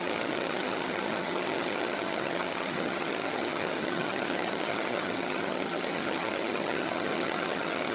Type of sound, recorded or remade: remade